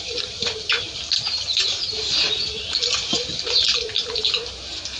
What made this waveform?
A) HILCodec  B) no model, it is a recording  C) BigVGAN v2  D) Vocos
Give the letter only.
B